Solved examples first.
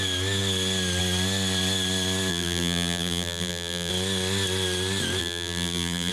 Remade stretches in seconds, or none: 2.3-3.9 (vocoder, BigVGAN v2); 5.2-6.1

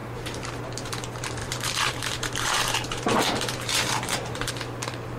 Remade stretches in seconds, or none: 0.0-0.6 (vocoder, BigVGAN v2); 1.4-4.5

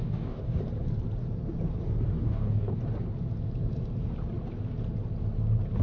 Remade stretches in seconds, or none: 0.0-0.6 (codec, DAC); 2.1-2.8